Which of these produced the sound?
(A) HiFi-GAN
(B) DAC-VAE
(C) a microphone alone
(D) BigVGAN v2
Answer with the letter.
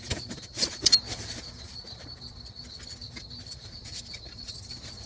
C